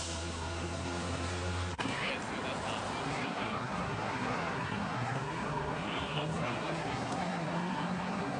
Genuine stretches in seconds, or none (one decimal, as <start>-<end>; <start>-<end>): 2.1-3.0